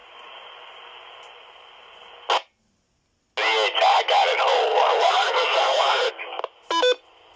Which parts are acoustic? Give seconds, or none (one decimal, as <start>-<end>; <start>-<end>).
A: 0.0-4.7; 6.1-7.4

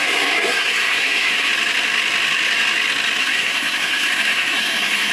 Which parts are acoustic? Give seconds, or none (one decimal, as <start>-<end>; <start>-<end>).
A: 1.5-3.2

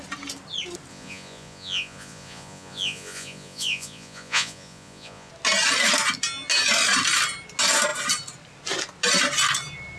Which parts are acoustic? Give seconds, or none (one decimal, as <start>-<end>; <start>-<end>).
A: 0.0-0.9; 5.3-10.0

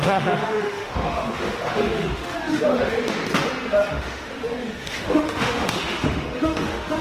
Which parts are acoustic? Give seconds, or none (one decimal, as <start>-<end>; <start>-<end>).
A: 3.2-3.9

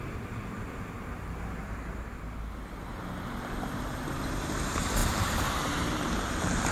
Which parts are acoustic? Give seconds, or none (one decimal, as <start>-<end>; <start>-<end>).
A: 0.0-5.0

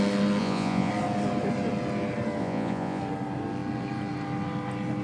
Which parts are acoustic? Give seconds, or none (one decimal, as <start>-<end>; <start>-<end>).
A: 0.0-0.4; 0.9-2.4; 3.0-5.0